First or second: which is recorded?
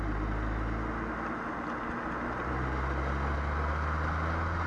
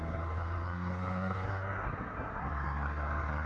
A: first